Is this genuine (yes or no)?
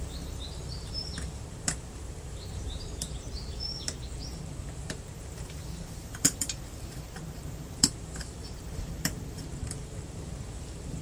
no